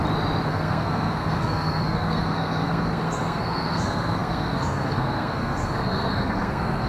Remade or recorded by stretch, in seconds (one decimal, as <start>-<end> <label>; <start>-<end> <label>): 0.0-0.5 recorded; 0.5-6.9 remade